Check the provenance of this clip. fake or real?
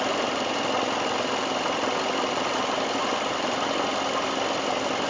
fake